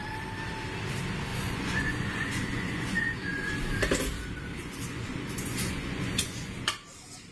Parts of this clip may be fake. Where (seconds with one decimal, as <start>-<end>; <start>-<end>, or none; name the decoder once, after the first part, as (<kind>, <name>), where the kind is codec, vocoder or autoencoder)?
1.3-3.5 (vocoder, Vocos); 4.6-6.7